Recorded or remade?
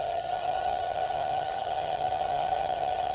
remade